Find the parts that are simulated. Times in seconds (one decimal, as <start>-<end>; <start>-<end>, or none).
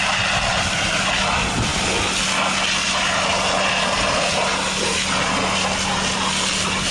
none